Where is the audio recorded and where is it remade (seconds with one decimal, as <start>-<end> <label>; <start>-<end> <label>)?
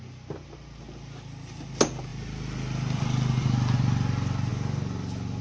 0.0-5.4 recorded